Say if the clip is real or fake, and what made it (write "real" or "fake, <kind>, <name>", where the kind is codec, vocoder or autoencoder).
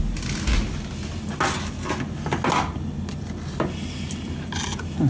real